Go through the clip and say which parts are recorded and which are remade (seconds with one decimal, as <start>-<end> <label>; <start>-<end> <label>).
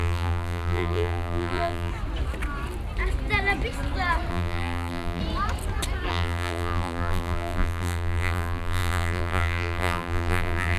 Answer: 0.0-1.9 remade; 1.9-4.3 recorded; 4.3-5.2 remade; 5.2-6.1 recorded; 6.1-10.8 remade